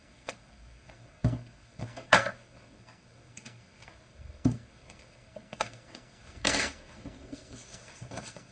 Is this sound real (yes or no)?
no